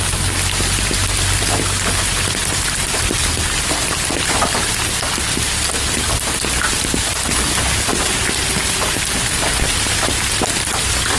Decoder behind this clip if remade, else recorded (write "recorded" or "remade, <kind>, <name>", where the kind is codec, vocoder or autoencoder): recorded